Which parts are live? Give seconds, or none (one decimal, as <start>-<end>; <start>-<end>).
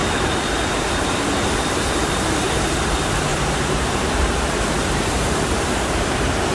0.0-3.3; 5.9-6.5